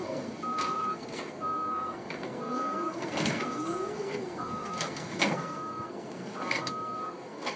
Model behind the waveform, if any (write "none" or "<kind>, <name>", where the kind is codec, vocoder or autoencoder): codec, SNAC